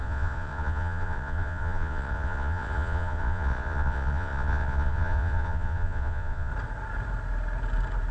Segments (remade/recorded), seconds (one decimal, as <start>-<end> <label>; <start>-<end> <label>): 0.0-6.5 remade; 6.5-8.1 recorded